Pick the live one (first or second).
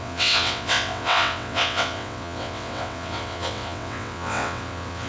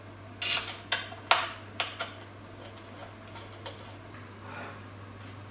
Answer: second